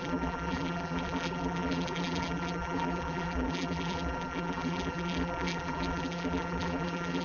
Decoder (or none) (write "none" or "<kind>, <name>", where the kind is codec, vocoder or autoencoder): vocoder, BigVGAN v2